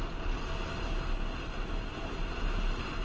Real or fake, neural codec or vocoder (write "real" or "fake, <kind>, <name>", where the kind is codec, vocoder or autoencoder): real